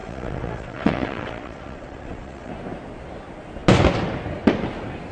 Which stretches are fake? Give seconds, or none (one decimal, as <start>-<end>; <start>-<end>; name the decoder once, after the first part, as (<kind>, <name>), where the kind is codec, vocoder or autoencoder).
0.0-2.5 (vocoder, WaveNeXt)